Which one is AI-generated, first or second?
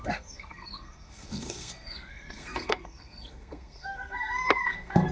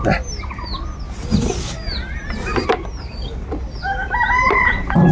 first